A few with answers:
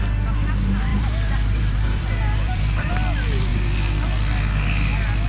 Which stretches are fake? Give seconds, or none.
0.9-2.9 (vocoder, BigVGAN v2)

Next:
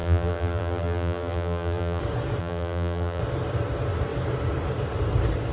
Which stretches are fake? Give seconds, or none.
0.0-2.0 (vocoder, BigVGAN v2); 2.4-3.2

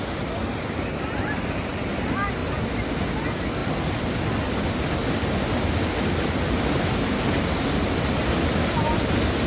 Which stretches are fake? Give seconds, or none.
none

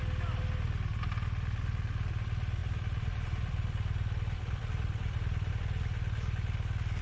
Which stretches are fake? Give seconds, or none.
2.6-5.5 (vocoder, BigVGAN v2)